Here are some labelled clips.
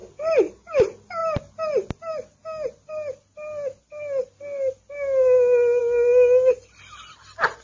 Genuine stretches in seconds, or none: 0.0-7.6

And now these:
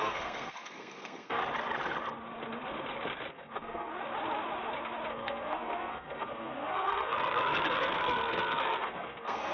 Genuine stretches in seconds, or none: 1.4-3.3; 3.9-5.1

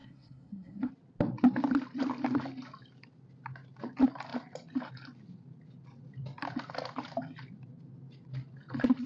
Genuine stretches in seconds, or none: 0.9-9.1

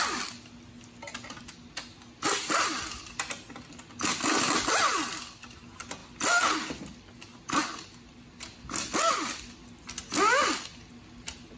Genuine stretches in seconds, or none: 0.0-11.6

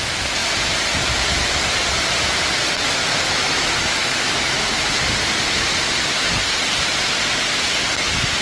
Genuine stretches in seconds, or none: 0.0-3.3; 4.9-8.4